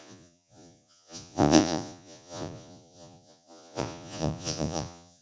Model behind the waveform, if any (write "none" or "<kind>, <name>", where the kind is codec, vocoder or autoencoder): vocoder, Vocos